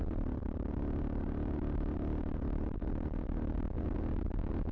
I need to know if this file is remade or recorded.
recorded